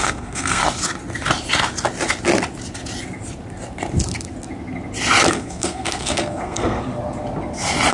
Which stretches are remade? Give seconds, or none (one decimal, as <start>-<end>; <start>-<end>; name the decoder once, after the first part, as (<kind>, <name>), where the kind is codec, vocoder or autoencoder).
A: 0.0-0.6 (codec, SNAC); 5.3-6.9